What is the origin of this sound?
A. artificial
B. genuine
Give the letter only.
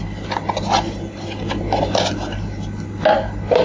B